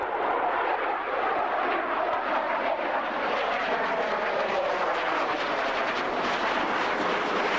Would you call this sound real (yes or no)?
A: no